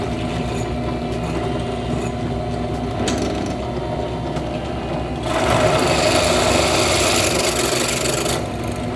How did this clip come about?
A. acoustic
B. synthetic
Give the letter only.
A